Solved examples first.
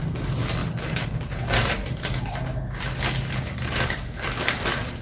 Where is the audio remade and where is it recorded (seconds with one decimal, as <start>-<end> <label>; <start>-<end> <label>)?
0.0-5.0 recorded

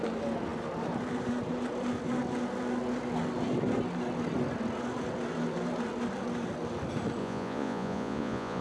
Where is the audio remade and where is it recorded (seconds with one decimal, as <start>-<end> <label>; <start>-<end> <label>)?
0.0-7.2 recorded; 7.2-8.6 remade

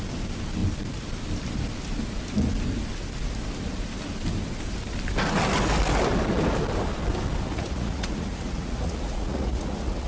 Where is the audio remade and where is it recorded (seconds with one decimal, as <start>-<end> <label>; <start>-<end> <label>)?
0.0-7.5 recorded; 7.5-10.1 remade

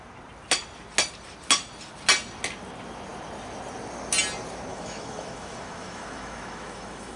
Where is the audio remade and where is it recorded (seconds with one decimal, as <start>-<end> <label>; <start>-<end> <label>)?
0.0-4.7 recorded; 4.7-7.2 remade

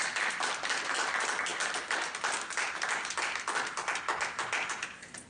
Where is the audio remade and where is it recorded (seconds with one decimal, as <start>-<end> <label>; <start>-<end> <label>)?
0.0-5.3 recorded

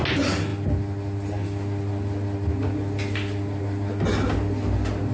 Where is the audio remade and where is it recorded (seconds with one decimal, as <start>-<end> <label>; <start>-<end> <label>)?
0.0-5.1 recorded